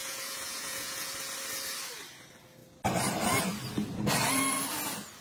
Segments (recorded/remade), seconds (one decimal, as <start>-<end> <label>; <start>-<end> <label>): 0.0-1.1 remade; 1.1-5.2 recorded